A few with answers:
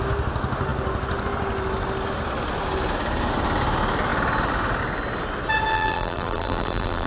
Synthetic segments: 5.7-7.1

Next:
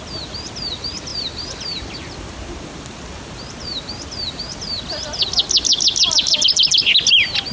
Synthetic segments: none

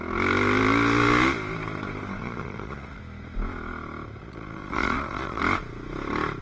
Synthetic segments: 2.2-3.0; 4.2-5.4

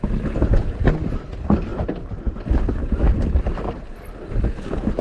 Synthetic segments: none